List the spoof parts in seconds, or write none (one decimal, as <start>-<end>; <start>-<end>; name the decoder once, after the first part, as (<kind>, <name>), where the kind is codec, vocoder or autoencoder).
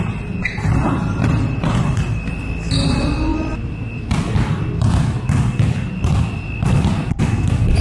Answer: 0.8-2.5 (vocoder, BigVGAN v2); 3.3-7.2